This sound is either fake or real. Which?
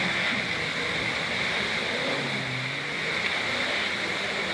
real